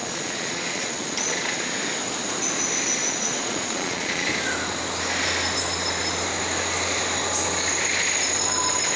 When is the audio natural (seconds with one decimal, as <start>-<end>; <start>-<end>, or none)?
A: 1.7-3.0; 4.3-9.0